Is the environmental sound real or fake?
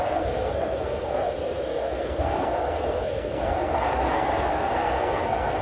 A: fake